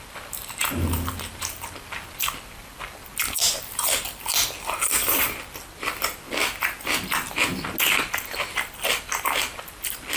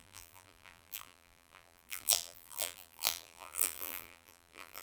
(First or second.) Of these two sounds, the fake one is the second